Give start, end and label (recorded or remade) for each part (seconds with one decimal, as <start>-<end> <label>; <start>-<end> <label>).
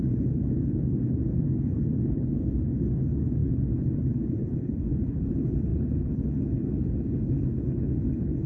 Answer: 0.0-8.5 remade